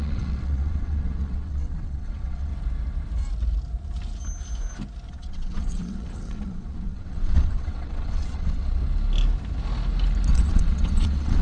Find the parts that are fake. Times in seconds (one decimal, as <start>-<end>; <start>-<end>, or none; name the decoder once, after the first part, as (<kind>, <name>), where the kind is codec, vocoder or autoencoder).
0.0-2.5 (vocoder, WaveNeXt); 5.1-8.8; 10.3-11.4